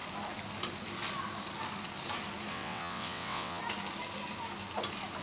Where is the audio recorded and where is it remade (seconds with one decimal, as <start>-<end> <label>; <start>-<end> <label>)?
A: 0.0-2.5 recorded; 2.5-3.6 remade; 3.6-5.2 recorded